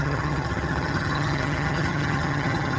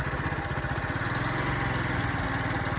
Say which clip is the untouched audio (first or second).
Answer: second